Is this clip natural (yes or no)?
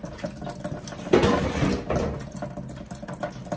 yes